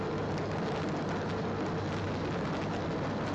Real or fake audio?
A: real